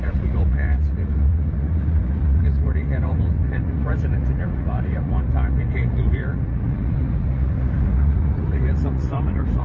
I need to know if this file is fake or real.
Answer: fake